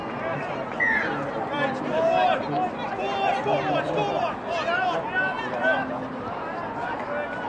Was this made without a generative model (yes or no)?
yes